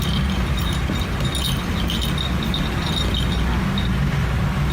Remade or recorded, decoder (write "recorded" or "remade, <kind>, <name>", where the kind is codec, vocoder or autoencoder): recorded